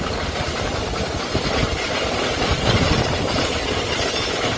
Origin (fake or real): real